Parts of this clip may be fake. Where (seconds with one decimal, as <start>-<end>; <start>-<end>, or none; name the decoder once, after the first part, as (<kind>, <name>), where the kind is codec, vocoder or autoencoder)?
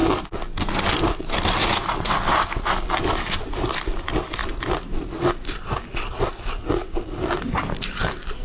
none